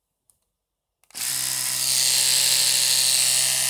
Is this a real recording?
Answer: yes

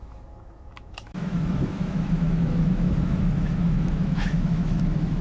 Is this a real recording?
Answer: no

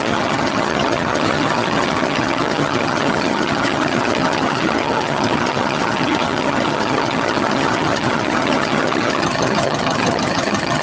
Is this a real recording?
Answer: no